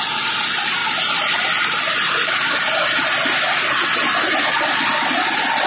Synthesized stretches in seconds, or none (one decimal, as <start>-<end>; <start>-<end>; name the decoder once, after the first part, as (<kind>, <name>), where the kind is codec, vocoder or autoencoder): none

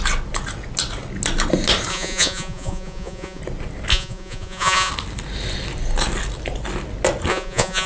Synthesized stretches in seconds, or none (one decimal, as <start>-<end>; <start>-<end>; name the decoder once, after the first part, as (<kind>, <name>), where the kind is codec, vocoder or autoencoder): 1.9-3.4 (vocoder, Vocos); 3.9-4.9; 7.3-7.9

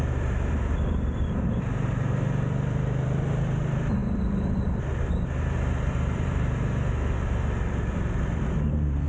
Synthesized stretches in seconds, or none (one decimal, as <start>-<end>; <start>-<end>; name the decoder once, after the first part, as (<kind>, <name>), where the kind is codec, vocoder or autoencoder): 0.0-9.1 (vocoder, BigVGAN v2)

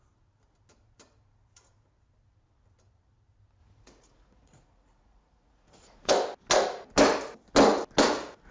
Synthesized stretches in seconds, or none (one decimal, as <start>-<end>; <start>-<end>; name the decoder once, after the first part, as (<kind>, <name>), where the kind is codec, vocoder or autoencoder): 3.6-6.1 (vocoder, Vocos)

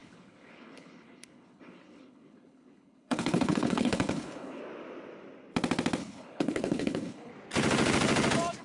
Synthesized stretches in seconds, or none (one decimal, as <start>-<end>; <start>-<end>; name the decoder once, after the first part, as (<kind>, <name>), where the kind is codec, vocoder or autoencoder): 0.0-4.6 (codec, HILCodec); 6.0-7.3

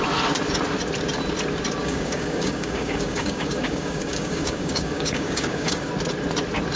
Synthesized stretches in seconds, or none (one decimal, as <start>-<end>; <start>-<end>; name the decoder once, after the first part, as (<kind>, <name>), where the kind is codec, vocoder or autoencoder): 1.8-5.9 (codec, DAC)

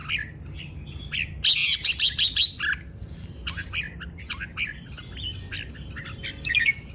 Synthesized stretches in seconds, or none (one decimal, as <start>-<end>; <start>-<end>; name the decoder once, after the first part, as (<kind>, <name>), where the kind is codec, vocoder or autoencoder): none

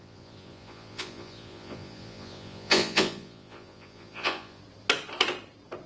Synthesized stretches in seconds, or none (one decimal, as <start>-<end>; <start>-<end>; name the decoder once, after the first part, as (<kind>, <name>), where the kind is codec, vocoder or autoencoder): 0.0-4.6 (vocoder, Vocos)